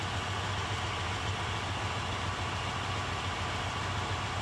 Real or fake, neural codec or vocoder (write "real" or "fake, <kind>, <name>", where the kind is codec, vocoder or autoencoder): real